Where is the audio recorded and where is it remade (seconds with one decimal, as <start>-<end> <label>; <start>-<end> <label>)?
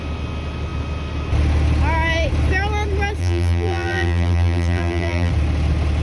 0.0-3.2 recorded; 3.2-5.3 remade; 5.3-6.0 recorded